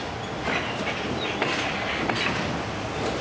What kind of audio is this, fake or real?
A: real